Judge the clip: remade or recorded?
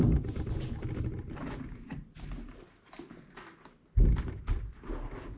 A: recorded